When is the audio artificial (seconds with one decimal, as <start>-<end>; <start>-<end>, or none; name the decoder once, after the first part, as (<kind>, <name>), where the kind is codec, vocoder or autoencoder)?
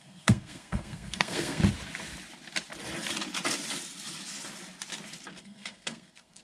0.0-1.6 (codec, SNAC); 5.4-6.4